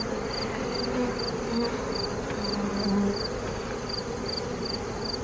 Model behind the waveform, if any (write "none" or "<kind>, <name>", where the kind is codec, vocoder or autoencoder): none